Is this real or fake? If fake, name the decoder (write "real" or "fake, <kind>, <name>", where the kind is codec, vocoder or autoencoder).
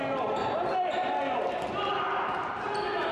real